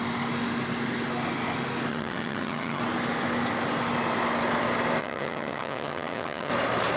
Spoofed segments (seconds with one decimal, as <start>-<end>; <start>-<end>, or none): 1.9-2.8; 5.0-6.5

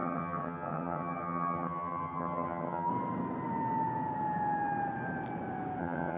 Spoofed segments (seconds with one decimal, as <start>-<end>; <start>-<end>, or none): 0.0-2.9; 5.8-6.2

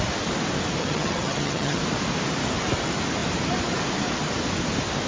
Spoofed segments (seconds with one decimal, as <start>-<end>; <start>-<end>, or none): 0.8-1.8

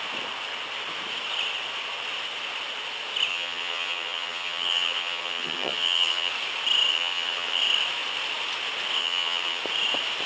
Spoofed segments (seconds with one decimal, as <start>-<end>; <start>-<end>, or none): 3.3-6.3; 6.9-7.6; 9.0-9.6

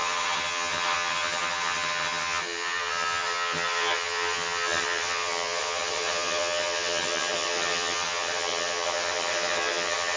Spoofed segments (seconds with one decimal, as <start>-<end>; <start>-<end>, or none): 0.0-10.2